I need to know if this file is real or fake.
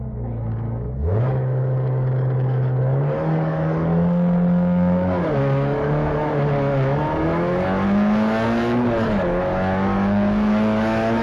fake